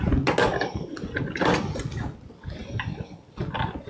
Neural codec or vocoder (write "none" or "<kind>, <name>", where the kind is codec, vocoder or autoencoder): none